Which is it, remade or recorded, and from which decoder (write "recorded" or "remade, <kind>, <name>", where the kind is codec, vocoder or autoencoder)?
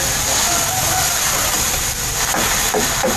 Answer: recorded